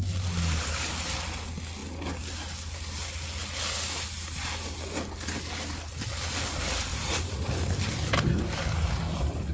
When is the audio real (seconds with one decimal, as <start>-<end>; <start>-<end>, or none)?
0.0-6.9; 7.5-9.5